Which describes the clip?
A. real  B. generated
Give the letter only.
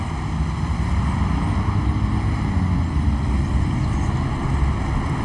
A